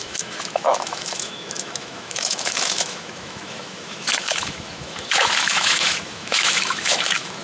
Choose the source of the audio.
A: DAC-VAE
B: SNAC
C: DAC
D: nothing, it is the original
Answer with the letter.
A